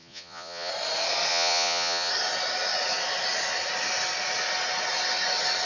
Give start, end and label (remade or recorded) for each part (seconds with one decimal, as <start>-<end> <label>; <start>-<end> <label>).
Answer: 0.0-0.7 remade; 0.7-1.3 recorded; 1.3-2.1 remade; 2.1-5.7 recorded